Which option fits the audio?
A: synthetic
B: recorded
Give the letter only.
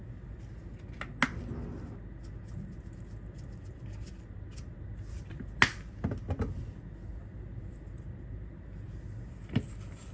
B